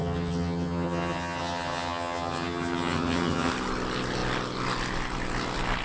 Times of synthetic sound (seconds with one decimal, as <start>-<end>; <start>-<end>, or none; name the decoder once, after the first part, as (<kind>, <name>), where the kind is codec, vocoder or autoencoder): 0.0-3.5 (vocoder, HiFi-GAN)

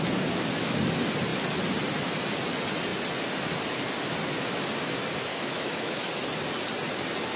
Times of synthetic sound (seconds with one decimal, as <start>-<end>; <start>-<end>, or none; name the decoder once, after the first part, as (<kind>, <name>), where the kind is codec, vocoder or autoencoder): 5.3-6.1 (autoencoder, DAC-VAE)

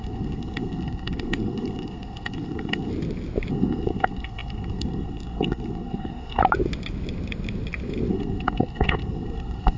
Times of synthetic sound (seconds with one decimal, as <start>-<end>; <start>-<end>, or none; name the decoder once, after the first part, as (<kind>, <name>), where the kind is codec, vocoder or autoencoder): 0.0-2.9 (codec, SNAC); 3.5-6.4; 8.1-9.8

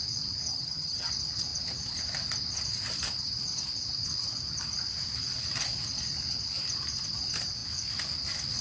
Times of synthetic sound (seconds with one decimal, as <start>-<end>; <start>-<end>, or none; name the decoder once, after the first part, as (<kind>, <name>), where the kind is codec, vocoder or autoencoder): 0.5-1.1 (vocoder, HiFi-GAN)

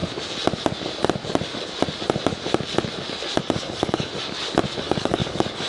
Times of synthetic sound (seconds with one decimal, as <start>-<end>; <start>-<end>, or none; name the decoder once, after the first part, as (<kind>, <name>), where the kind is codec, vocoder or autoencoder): 3.4-4.1 (codec, DAC); 4.8-5.7

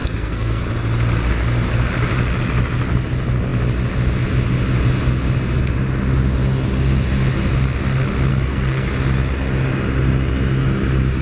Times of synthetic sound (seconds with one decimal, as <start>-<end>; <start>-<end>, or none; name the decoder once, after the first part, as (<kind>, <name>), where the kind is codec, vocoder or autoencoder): 0.0-0.6 (codec, SNAC); 8.3-8.9

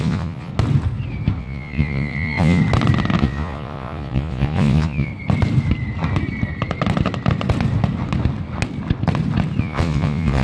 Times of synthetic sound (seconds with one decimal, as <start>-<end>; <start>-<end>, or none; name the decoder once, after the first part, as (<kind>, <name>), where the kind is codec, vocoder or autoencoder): 0.0-0.5 (vocoder, Vocos); 1.4-2.6; 3.2-5.1; 9.6-10.4

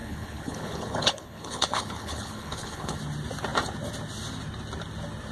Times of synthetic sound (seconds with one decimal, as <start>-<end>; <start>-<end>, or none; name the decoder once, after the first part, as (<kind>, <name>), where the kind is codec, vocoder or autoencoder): 0.0-3.0 (codec, HILCodec)